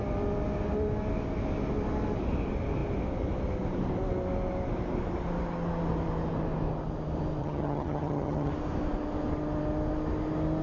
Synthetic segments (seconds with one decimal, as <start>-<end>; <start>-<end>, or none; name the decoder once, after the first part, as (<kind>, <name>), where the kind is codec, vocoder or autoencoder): 7.4-8.5 (vocoder, HiFi-GAN)